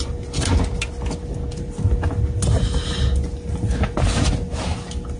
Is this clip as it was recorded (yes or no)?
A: yes